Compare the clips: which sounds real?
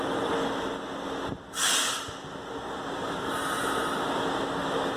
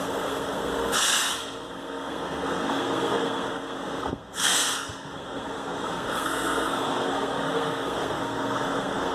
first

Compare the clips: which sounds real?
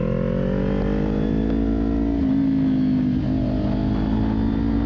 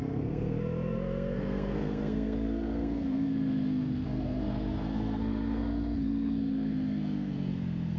first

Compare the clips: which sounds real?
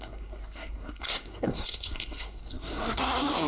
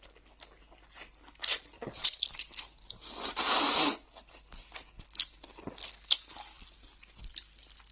second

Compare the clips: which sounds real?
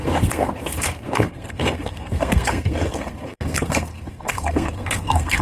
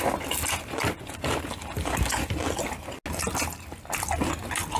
second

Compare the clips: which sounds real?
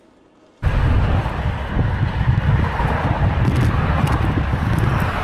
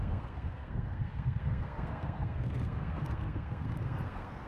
first